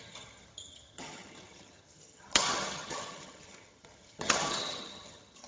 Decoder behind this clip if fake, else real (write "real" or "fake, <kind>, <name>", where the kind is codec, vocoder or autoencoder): fake, vocoder, HiFi-GAN